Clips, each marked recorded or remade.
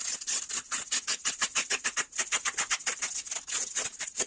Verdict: recorded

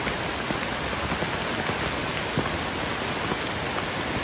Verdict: recorded